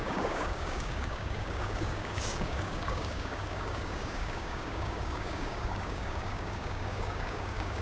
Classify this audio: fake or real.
fake